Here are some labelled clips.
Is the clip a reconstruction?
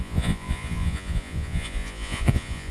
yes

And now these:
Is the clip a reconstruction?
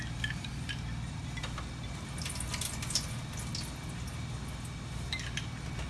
no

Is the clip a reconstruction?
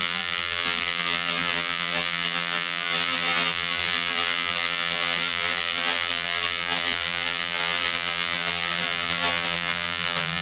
yes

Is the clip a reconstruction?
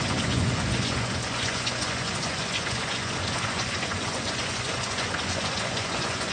yes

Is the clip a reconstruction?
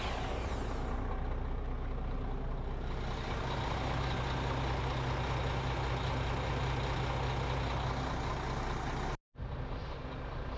no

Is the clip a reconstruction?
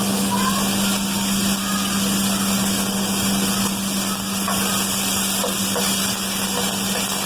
no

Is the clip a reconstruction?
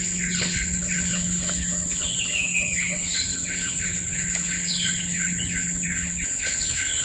yes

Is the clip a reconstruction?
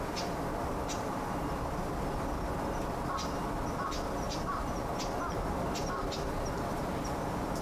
no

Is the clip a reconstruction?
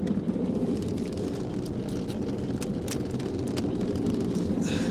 no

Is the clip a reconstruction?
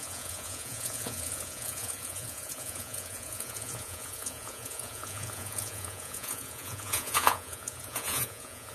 yes